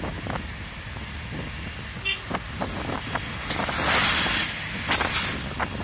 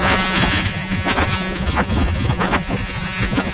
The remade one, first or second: second